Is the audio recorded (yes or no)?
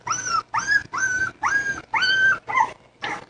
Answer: yes